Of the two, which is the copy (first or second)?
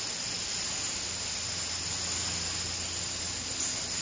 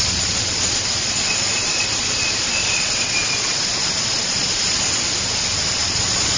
second